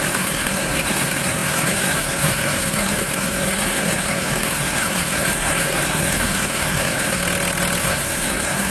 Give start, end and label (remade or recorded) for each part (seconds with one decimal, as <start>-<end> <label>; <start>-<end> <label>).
0.0-7.2 remade; 7.2-7.8 recorded; 7.8-8.7 remade